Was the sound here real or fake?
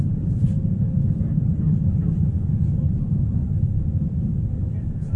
fake